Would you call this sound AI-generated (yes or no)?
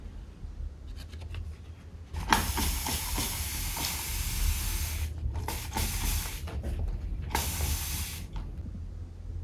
no